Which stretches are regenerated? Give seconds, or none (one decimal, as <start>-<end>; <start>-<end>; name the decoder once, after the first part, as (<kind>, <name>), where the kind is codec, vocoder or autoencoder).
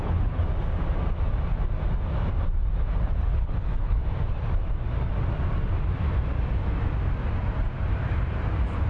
0.0-0.4 (codec, HILCodec); 3.0-4.0